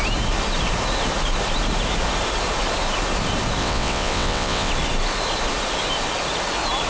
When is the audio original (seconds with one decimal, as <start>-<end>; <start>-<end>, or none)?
0.0-3.6; 4.7-6.9

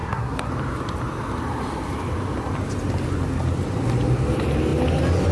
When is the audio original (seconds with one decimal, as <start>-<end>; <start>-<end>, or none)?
0.5-5.3

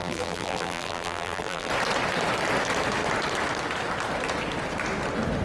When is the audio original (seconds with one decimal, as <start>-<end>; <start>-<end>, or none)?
1.7-5.4

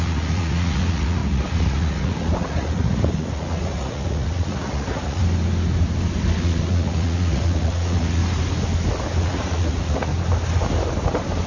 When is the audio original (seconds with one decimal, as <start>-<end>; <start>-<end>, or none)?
5.2-6.4; 8.2-9.2; 10.1-11.5